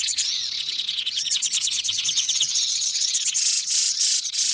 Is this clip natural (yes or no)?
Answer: no